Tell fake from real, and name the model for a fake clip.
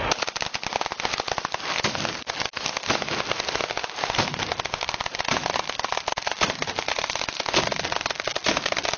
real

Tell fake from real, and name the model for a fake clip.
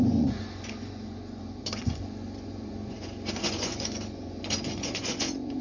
fake, vocoder, Vocos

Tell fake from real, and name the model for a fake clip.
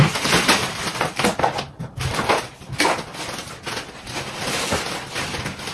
real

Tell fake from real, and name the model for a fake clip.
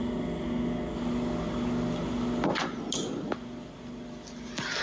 real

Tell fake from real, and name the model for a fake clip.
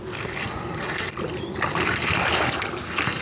real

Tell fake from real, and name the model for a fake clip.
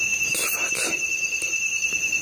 real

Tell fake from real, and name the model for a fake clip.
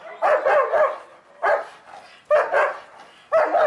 real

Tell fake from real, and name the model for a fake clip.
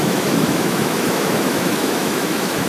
fake, autoencoder, DAC-VAE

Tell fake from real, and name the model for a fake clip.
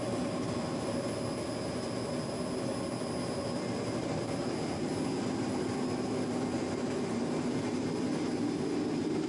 real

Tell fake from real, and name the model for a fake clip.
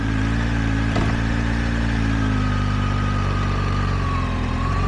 fake, vocoder, BigVGAN v2